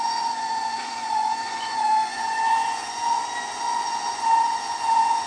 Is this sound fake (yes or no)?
yes